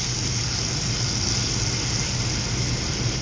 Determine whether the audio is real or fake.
real